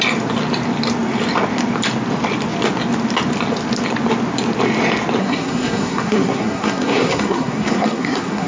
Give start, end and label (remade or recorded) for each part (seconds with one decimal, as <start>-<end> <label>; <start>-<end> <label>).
0.0-5.2 recorded; 5.2-8.5 remade